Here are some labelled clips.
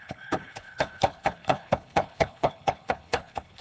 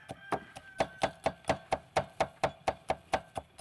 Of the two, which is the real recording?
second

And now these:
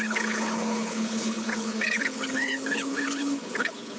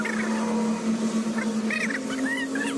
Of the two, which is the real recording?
second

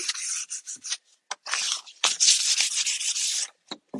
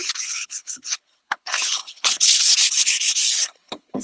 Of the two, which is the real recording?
first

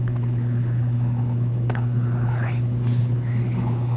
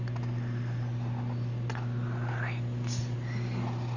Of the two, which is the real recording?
second